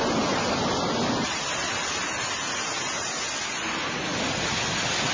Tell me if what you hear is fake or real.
real